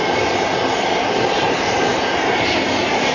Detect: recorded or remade recorded